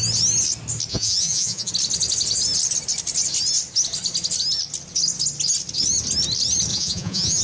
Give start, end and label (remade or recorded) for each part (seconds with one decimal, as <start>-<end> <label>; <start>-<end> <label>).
0.0-0.9 recorded; 0.9-1.7 remade; 1.7-6.7 recorded; 6.7-7.4 remade